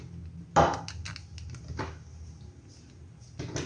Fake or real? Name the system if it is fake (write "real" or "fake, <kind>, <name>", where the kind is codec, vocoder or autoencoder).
real